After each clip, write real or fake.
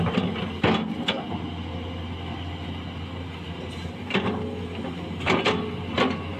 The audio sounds real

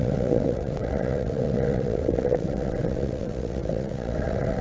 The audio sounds fake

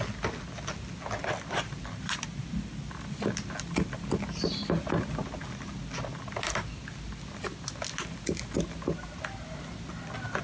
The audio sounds real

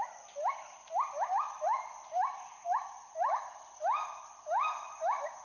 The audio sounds real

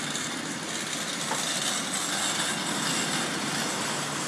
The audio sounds real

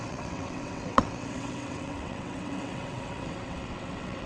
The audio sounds fake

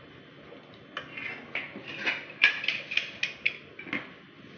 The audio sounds real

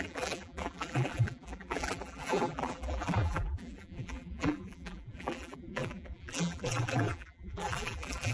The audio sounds fake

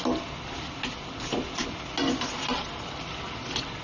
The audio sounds real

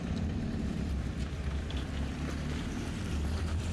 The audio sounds fake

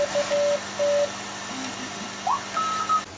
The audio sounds real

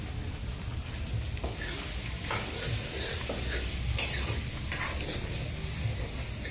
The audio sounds real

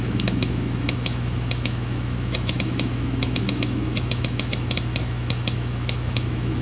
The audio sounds fake